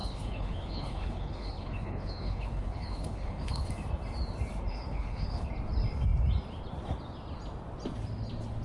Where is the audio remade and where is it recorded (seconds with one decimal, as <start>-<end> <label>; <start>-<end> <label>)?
0.0-3.7 remade; 3.7-4.7 recorded; 4.7-5.5 remade; 5.5-8.6 recorded